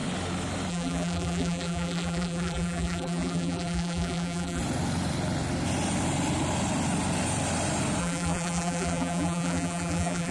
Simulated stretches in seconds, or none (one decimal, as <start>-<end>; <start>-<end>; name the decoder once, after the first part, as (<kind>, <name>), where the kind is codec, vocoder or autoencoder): 0.7-4.6 (vocoder, BigVGAN v2); 8.0-10.3